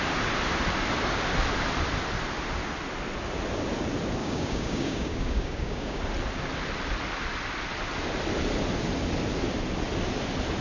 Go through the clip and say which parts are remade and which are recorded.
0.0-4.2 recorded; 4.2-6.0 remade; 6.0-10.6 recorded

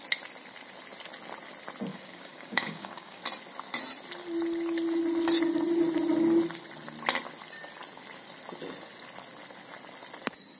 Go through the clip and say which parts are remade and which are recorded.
0.0-1.9 recorded; 1.9-3.2 remade; 3.2-10.6 recorded

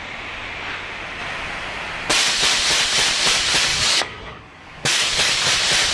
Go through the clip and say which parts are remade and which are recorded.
0.0-3.7 recorded; 3.7-5.5 remade; 5.5-5.9 recorded